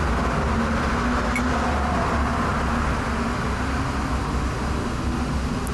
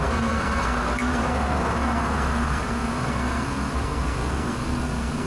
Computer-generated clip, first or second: second